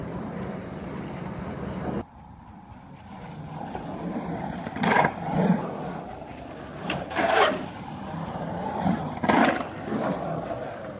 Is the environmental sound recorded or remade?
remade